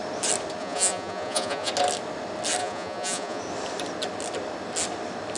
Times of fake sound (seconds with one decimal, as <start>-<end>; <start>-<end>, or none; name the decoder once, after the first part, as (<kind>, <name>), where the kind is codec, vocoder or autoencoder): 0.6-1.7 (vocoder, Vocos); 2.6-3.4